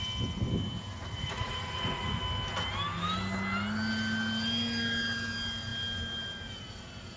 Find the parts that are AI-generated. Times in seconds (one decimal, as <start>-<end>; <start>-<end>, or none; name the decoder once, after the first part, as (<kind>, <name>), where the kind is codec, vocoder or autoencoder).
1.0-2.2 (vocoder, Vocos)